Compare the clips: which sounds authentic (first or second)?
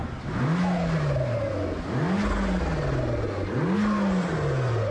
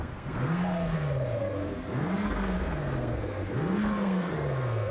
first